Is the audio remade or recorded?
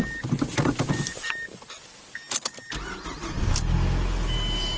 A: recorded